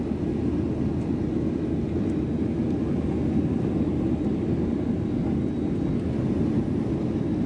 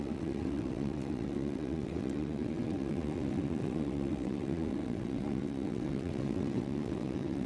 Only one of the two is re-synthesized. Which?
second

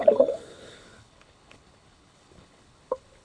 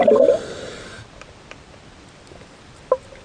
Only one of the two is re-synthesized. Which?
first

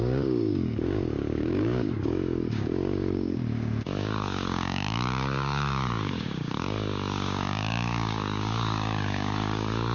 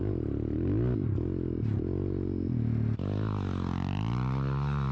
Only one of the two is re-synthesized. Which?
first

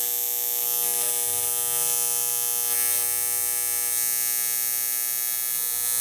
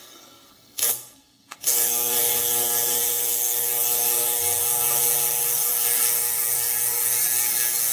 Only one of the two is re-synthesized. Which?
second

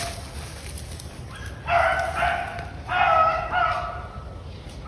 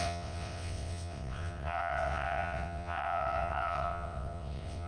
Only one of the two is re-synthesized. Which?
second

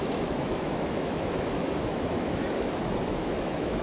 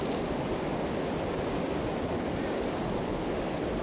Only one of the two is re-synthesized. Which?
first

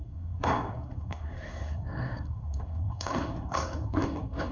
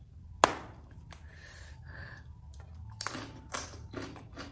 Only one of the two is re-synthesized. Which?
first